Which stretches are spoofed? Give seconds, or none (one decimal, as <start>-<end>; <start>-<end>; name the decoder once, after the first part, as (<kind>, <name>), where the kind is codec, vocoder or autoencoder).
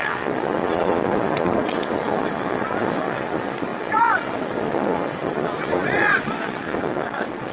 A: 0.0-7.5 (vocoder, Vocos)